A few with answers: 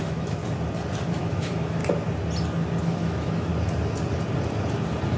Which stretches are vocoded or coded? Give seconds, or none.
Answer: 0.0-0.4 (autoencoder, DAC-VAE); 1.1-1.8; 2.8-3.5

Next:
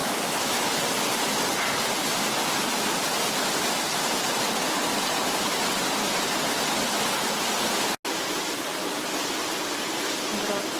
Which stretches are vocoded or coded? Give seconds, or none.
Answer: 0.0-0.8 (autoencoder, DAC-VAE)

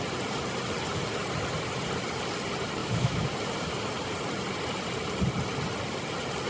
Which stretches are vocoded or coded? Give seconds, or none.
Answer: 2.8-3.3 (autoencoder, DAC-VAE)

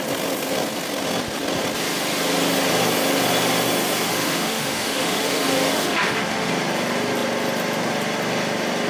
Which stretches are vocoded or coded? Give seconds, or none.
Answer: 4.1-6.5 (autoencoder, DAC-VAE)

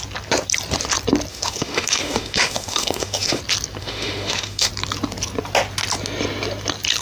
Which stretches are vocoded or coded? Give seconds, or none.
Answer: 1.3-3.4 (autoencoder, DAC-VAE); 3.8-4.7